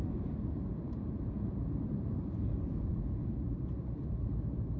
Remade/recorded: remade